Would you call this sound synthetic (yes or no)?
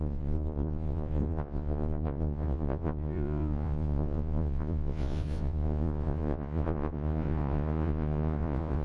yes